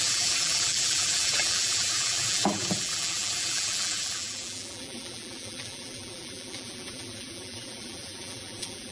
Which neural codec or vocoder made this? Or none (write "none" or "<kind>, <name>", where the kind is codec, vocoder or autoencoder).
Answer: vocoder, BigVGAN v2